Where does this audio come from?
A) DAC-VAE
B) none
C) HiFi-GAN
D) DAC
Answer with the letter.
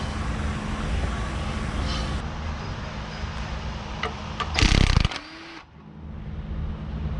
B